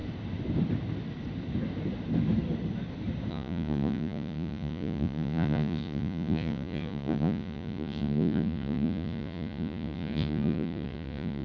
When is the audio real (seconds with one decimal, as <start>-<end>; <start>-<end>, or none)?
0.0-3.3